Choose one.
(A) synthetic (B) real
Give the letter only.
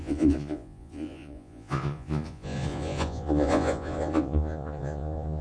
A